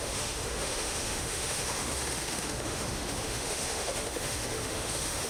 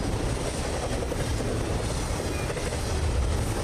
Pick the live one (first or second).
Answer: second